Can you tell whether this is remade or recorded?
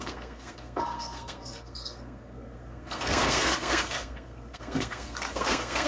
remade